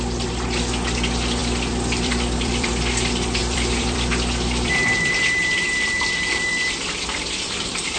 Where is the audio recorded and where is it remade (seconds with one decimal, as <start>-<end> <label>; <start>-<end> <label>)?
0.0-1.4 recorded; 1.4-2.7 remade; 2.7-3.4 recorded; 3.4-8.0 remade